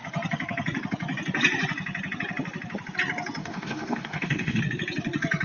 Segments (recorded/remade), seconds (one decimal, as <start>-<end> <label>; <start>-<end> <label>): 0.0-3.4 recorded; 3.4-4.6 remade; 4.6-5.4 recorded